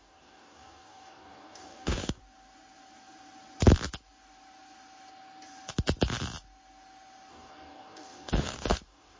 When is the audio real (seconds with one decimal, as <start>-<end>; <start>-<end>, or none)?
2.2-7.3